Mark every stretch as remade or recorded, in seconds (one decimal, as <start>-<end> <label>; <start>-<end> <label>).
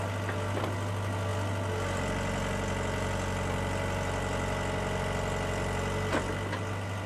0.0-7.1 recorded